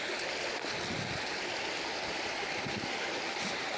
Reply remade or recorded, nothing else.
recorded